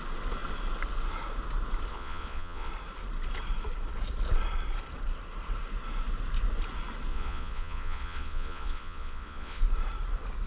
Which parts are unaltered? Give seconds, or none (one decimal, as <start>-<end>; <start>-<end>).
0.0-1.9; 2.7-7.1; 9.6-10.5